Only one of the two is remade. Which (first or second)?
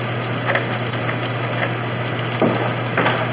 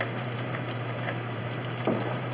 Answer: second